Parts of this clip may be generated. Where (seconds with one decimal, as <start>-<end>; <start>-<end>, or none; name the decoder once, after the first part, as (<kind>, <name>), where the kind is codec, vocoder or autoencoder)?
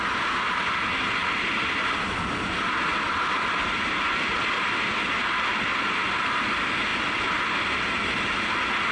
none